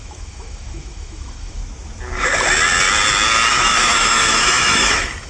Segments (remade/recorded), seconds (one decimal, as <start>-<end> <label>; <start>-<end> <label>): 0.0-1.6 remade; 1.6-3.5 recorded; 3.5-5.3 remade